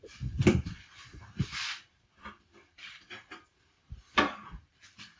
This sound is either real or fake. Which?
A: fake